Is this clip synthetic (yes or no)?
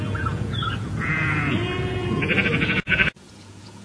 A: yes